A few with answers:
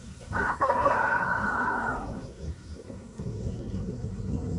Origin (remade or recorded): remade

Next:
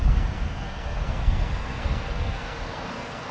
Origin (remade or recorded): remade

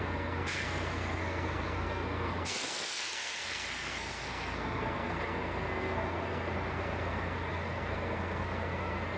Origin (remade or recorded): remade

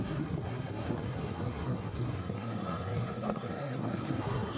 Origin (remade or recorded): remade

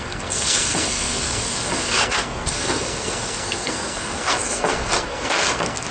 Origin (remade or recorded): remade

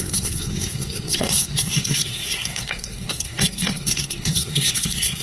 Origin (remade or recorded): remade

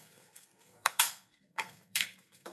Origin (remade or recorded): remade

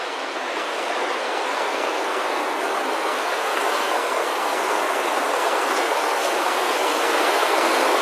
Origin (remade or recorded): remade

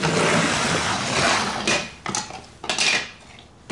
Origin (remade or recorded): recorded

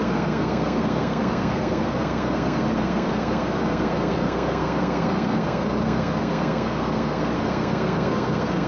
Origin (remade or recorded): remade